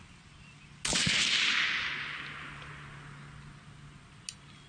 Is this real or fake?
real